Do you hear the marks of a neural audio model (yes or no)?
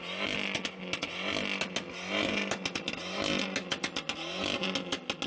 no